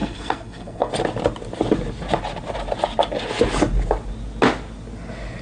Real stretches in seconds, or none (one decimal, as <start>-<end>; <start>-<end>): 0.9-5.4